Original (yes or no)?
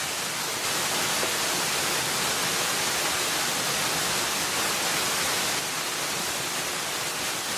yes